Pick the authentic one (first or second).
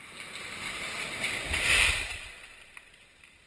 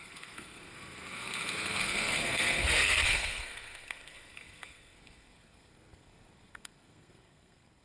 first